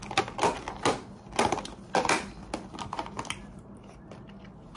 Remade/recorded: recorded